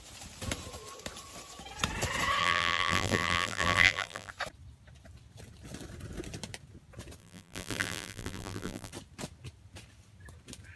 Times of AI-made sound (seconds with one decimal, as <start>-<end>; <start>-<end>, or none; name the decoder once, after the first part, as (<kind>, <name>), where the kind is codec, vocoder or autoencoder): 2.4-4.3 (vocoder, BigVGAN v2); 7.2-8.9